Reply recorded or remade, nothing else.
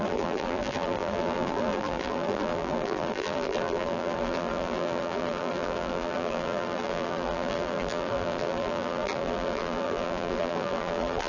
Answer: remade